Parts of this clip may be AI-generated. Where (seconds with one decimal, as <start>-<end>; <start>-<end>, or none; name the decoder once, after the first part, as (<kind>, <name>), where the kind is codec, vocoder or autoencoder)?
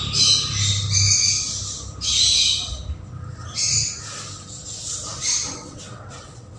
4.8-6.6 (vocoder, WaveNeXt)